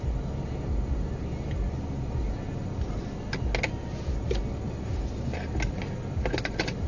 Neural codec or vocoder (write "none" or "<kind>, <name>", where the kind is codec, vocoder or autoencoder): none